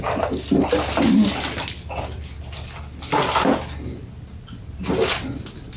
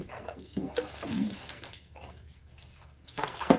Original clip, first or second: first